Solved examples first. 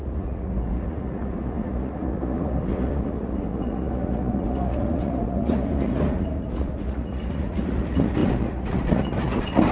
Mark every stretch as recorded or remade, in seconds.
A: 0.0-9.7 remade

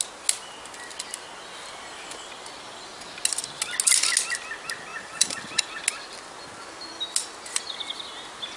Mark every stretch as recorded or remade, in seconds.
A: 0.0-4.9 recorded; 4.9-5.7 remade; 5.7-8.6 recorded

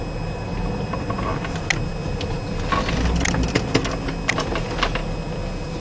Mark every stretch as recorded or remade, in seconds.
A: 0.0-5.8 recorded

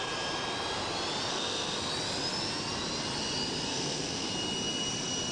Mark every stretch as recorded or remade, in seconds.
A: 0.0-1.3 recorded; 1.3-1.9 remade; 1.9-3.7 recorded; 3.7-4.3 remade; 4.3-5.3 recorded